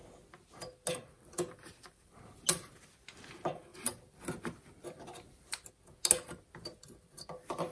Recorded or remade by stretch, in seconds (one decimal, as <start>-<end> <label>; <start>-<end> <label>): 0.0-1.0 recorded; 1.0-2.4 remade; 2.4-3.7 recorded; 3.7-5.7 remade; 5.7-7.7 recorded